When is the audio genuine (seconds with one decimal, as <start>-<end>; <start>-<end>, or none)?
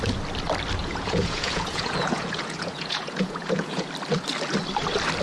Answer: 0.0-0.8; 3.9-5.2